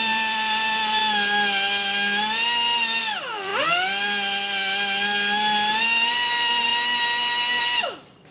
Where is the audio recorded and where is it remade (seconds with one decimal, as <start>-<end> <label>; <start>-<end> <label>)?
0.0-1.0 remade; 1.0-3.0 recorded; 3.0-3.5 remade; 3.5-5.8 recorded; 5.8-6.7 remade; 6.7-7.6 recorded; 7.6-8.3 remade